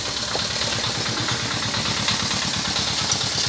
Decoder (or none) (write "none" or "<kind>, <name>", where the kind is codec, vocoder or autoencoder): none